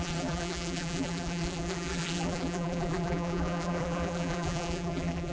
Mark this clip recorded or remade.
remade